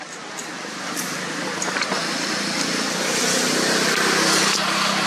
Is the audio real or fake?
real